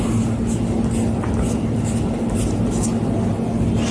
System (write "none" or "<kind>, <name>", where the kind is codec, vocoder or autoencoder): none